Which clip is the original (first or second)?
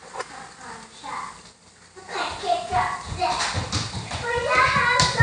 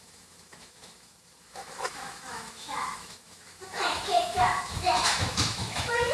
first